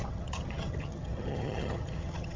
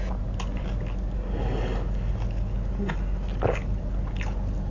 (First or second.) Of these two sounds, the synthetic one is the first